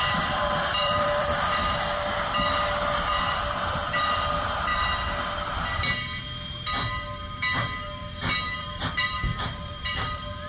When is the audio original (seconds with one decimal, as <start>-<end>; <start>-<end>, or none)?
1.6-3.2; 4.7-8.6

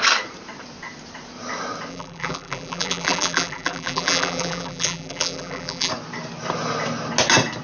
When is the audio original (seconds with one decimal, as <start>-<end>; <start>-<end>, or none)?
0.0-1.9; 5.9-7.6

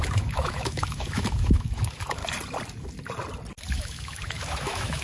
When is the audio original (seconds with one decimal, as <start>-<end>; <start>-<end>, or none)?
2.2-3.8

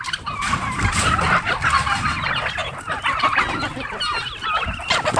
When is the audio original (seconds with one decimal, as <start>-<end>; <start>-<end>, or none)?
0.0-5.2